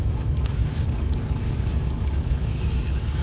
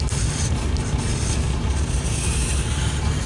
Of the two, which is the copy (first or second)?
first